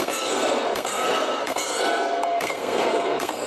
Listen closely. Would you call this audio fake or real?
fake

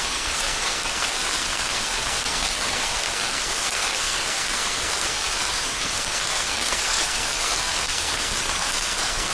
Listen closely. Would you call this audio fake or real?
fake